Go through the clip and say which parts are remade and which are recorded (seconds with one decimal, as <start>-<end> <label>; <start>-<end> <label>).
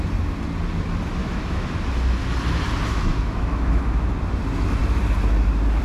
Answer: 0.0-1.2 recorded; 1.2-1.7 remade; 1.7-2.9 recorded; 2.9-4.1 remade; 4.1-5.8 recorded